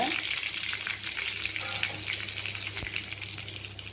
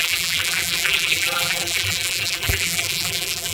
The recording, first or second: first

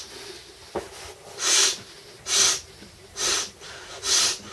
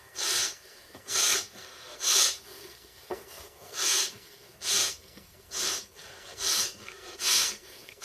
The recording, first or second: first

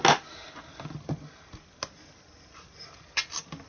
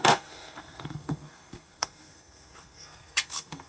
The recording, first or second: first